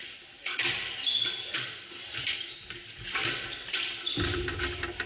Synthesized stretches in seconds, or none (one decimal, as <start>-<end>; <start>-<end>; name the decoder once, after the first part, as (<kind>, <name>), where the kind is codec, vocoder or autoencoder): none